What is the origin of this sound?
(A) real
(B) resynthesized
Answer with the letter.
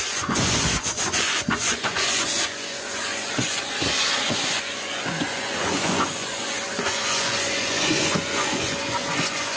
B